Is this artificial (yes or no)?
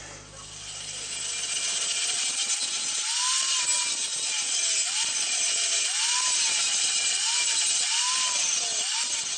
no